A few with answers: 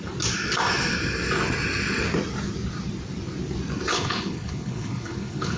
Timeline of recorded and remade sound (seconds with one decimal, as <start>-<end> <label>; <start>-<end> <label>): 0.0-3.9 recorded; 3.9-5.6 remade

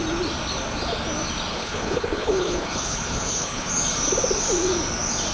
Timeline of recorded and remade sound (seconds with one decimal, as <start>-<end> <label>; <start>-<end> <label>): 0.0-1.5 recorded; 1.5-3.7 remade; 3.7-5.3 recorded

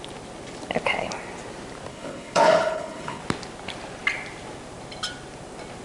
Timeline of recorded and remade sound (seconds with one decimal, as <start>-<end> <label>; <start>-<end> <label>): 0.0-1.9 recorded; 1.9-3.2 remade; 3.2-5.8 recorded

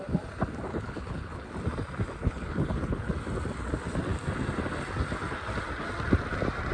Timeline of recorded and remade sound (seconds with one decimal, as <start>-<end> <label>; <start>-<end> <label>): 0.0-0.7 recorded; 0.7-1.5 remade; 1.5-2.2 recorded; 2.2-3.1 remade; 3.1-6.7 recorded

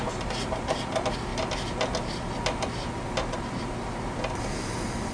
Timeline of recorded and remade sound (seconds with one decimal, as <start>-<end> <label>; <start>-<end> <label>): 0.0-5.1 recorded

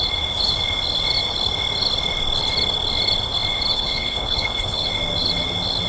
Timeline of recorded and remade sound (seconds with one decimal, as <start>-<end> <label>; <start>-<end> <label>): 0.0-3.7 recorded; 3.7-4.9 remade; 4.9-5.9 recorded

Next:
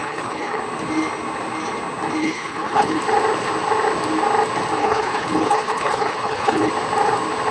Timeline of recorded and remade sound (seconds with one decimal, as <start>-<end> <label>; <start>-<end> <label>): 0.0-0.6 remade; 0.6-2.2 recorded; 2.2-3.0 remade; 3.0-4.8 recorded; 4.8-6.7 remade; 6.7-7.5 recorded

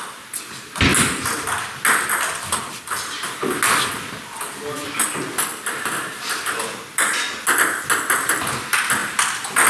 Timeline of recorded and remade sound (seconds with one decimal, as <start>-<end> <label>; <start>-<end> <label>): 0.0-9.7 recorded